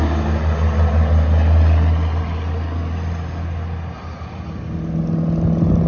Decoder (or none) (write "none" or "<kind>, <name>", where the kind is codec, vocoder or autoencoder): none